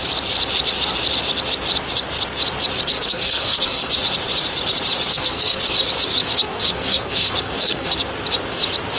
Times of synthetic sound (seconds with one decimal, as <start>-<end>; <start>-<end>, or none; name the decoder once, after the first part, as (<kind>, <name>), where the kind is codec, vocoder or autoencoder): 2.9-3.9 (codec, SNAC); 5.1-5.6; 6.2-8.1